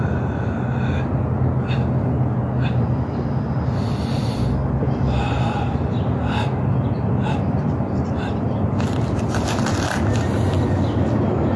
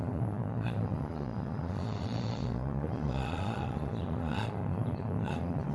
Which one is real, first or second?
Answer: first